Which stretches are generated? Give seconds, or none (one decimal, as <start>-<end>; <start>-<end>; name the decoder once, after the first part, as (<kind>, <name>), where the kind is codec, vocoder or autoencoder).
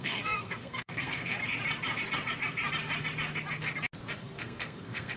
0.0-1.4 (codec, SNAC); 4.2-5.2